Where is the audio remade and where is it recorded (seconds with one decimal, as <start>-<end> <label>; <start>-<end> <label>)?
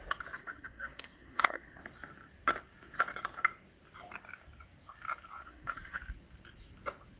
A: 0.0-0.4 recorded; 0.4-1.8 remade; 1.8-5.4 recorded; 5.4-6.0 remade; 6.0-7.2 recorded